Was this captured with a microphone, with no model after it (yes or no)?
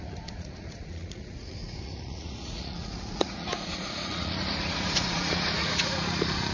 no